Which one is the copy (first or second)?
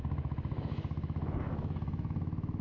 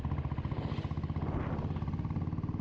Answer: first